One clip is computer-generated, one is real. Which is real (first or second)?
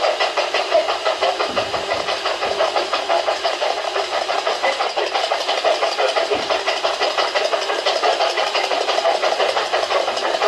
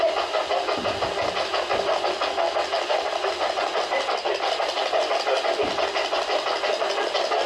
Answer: second